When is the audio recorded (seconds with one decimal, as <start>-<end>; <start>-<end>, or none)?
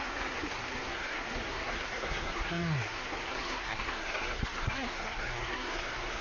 none